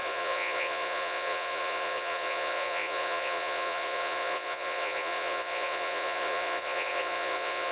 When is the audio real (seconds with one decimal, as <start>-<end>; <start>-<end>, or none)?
none